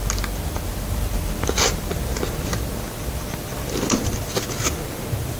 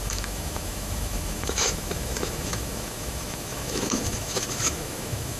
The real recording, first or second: first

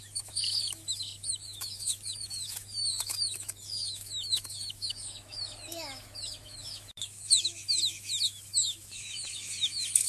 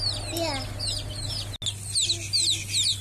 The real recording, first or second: second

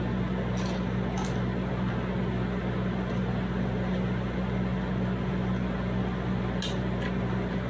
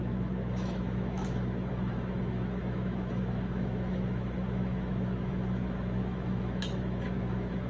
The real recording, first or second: first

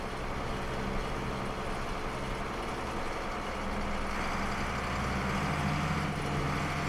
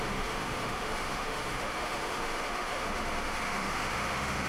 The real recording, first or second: first